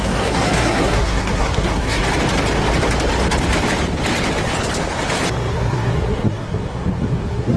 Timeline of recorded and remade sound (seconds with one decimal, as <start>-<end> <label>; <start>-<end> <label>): 0.0-2.0 remade; 2.0-5.5 recorded; 5.5-7.6 remade